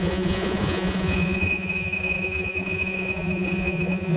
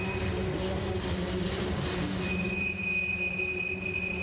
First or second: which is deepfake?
first